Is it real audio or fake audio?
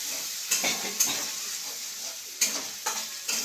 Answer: fake